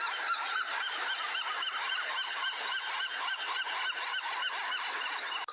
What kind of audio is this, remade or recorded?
recorded